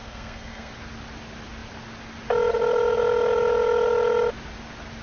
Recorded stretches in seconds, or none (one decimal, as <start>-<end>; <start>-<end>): 0.7-5.0